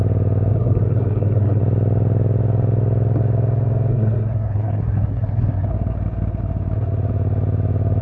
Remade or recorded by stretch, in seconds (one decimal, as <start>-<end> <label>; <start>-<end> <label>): 0.0-0.5 recorded; 0.5-1.6 remade; 1.6-3.9 recorded; 3.9-5.7 remade; 5.7-8.0 recorded